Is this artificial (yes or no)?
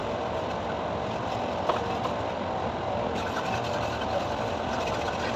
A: yes